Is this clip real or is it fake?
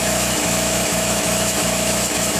fake